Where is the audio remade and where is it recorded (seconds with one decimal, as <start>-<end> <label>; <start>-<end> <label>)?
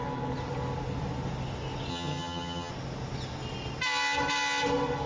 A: 0.0-1.9 recorded; 1.9-2.7 remade; 2.7-5.1 recorded